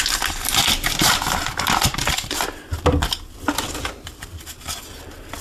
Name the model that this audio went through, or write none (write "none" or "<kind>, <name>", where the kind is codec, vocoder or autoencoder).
none